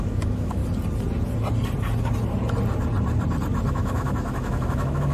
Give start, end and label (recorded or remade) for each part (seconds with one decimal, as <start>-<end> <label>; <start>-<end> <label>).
0.0-0.6 remade; 0.6-3.7 recorded; 3.7-5.1 remade